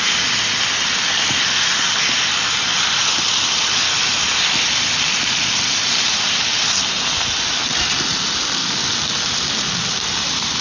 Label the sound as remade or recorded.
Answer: recorded